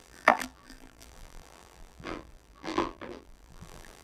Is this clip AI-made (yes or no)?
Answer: yes